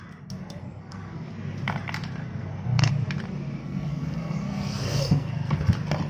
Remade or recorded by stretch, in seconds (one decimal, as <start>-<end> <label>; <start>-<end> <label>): 0.0-0.6 recorded; 0.6-1.3 remade; 1.3-2.2 recorded; 2.2-2.9 remade; 2.9-3.6 recorded; 3.6-5.6 remade; 5.6-6.1 recorded